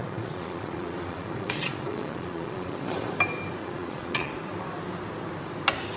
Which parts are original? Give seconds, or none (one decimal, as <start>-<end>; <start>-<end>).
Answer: 3.1-3.6; 4.3-6.0